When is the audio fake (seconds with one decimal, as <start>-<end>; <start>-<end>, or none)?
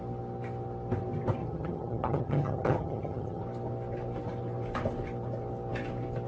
1.4-3.4